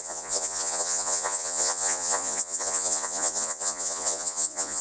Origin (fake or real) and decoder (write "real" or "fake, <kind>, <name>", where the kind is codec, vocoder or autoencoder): fake, vocoder, Vocos